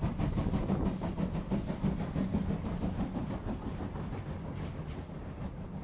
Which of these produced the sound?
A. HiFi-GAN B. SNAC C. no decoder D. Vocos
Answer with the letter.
C